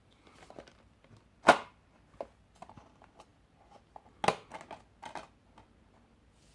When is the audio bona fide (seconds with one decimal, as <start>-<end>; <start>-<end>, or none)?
0.0-6.5